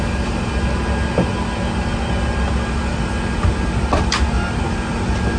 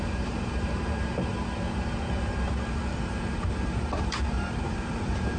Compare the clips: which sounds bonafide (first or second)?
first